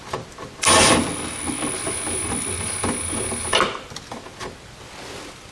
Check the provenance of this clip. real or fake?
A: real